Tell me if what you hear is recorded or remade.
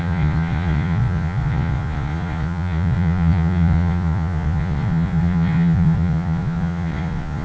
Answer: remade